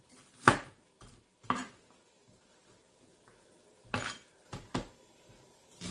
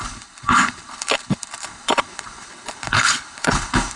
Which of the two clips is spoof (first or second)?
second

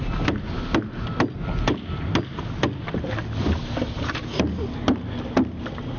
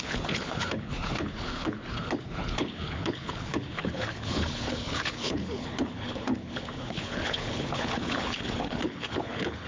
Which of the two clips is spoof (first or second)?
second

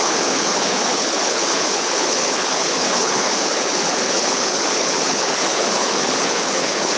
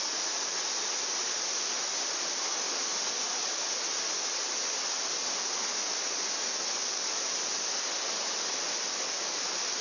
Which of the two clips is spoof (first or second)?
first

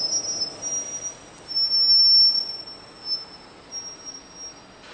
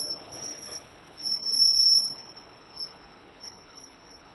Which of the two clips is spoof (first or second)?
second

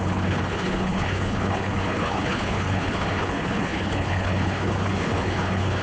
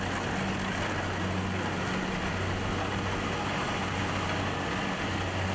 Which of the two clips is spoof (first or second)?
first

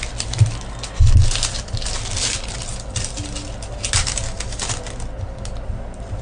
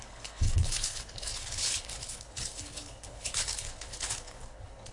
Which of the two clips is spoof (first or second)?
second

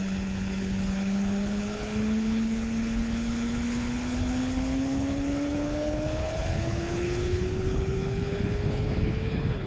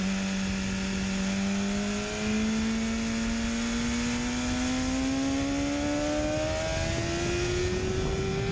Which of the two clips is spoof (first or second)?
first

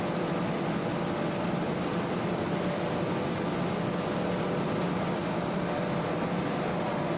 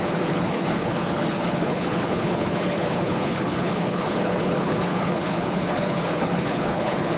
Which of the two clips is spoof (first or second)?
second